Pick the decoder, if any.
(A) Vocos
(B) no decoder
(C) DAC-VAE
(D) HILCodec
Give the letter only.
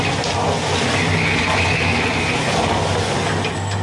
B